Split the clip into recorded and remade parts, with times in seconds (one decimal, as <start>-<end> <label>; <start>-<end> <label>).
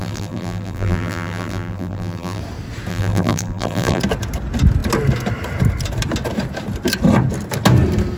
0.0-2.4 remade; 2.4-2.9 recorded; 2.9-4.0 remade; 4.0-8.2 recorded